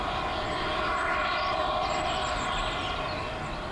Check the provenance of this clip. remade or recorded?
recorded